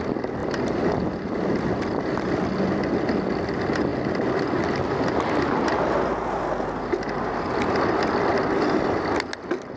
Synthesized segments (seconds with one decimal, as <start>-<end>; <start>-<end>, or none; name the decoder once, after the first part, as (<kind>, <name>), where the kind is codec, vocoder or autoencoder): none